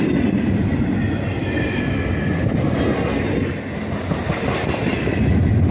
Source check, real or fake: real